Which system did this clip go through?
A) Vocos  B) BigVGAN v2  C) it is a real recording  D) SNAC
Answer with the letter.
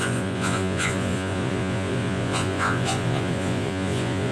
A